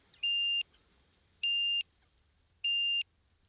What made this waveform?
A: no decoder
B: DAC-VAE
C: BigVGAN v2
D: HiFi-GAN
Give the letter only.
A